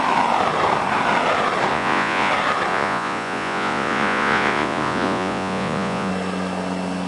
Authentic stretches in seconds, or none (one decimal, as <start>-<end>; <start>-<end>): 0.0-1.7; 2.3-2.7; 6.1-7.1